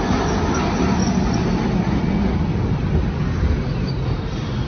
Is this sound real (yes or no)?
yes